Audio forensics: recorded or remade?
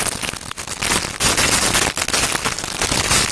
recorded